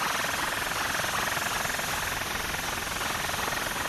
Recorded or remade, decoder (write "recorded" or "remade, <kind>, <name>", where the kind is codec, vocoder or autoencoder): recorded